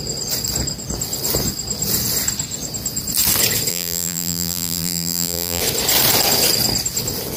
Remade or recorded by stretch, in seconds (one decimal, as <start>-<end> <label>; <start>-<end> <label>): 0.0-3.7 recorded; 3.7-5.6 remade; 5.6-7.4 recorded